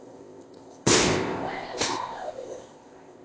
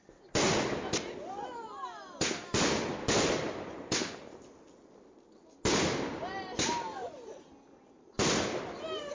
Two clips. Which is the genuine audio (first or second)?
second